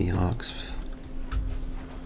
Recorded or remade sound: recorded